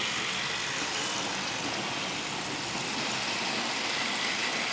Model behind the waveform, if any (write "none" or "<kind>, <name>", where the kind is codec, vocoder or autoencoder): none